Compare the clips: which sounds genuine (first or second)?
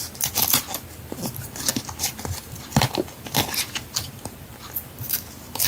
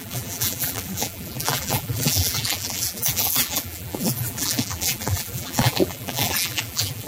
first